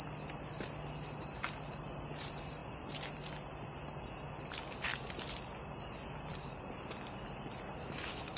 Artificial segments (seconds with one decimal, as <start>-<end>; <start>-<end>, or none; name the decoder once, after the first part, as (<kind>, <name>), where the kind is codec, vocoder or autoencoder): 0.0-2.6 (vocoder, BigVGAN v2); 4.4-4.9; 6.3-8.4